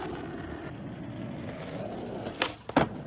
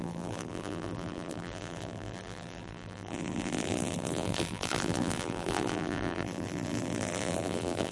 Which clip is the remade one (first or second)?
second